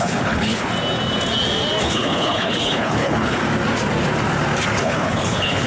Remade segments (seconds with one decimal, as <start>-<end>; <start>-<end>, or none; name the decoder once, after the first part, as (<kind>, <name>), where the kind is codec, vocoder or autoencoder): 0.0-0.7 (codec, HILCodec); 1.8-3.4; 4.8-5.7